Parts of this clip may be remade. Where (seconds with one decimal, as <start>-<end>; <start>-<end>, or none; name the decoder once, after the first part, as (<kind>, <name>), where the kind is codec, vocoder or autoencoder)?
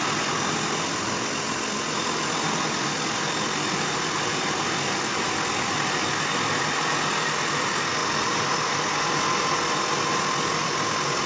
none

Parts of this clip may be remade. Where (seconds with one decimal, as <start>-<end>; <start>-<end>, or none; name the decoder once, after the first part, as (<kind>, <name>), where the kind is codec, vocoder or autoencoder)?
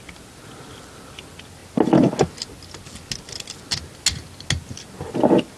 none